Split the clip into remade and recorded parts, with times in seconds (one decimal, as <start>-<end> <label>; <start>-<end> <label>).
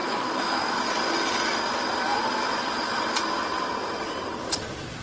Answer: 0.0-0.7 remade; 0.7-5.0 recorded